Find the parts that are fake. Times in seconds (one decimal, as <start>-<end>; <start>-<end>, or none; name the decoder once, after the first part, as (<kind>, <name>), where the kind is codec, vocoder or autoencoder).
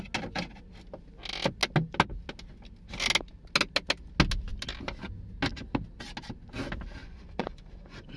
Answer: 7.0-8.2 (vocoder, Vocos)